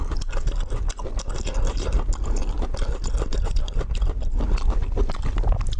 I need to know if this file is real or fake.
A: real